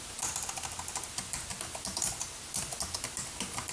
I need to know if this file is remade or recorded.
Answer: recorded